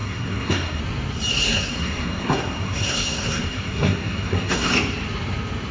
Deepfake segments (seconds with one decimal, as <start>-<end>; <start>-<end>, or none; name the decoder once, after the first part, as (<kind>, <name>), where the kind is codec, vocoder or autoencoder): 0.0-0.8 (codec, SNAC); 1.3-4.7